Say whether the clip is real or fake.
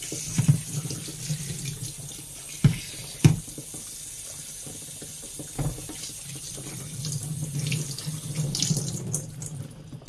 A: real